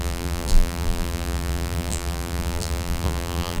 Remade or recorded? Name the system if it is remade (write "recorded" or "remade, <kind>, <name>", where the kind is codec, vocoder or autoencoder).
remade, vocoder, BigVGAN v2